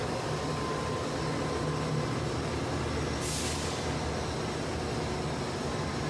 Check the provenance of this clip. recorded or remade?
recorded